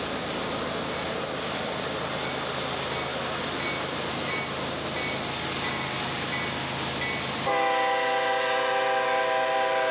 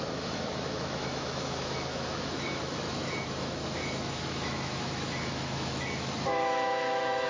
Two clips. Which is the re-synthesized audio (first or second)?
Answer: second